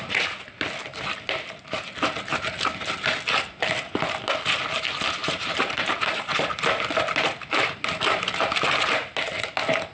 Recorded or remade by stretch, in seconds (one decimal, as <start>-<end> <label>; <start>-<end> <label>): 0.0-5.2 recorded; 5.2-6.5 remade; 6.5-9.9 recorded